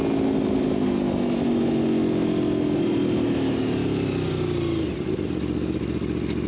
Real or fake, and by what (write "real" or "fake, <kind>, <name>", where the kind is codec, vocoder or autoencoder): real